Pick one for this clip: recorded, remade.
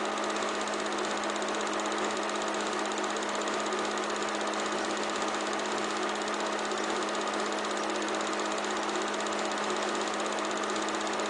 recorded